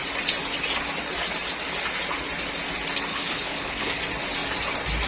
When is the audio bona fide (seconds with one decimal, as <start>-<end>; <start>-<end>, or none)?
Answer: 0.0-3.1; 4.0-5.1